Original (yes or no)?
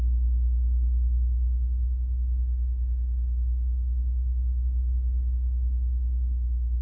yes